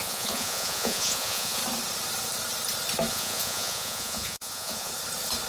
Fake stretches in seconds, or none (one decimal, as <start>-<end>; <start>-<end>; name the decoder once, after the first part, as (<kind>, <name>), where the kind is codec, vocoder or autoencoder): 0.0-1.6 (vocoder, Vocos); 3.1-4.9